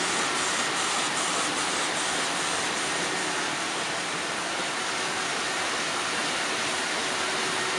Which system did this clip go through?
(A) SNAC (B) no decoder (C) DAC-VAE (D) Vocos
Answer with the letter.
B